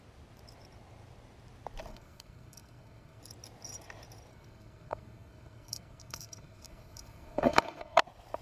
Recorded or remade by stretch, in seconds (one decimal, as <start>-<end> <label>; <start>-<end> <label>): 0.0-1.9 recorded; 1.9-3.2 remade; 3.2-4.3 recorded; 4.3-8.0 remade; 8.0-8.4 recorded